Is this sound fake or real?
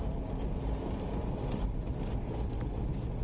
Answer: real